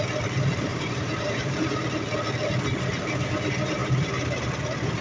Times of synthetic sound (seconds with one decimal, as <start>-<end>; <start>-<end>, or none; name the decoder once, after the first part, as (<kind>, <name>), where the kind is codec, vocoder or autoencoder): 0.7-1.7 (vocoder, BigVGAN v2)